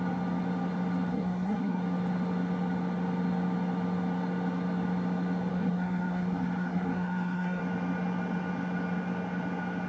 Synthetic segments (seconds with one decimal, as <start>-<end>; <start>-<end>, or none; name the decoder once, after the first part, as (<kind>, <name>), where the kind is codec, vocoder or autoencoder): 1.1-1.8 (codec, SNAC); 5.5-7.6